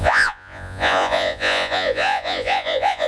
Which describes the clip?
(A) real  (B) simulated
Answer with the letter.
B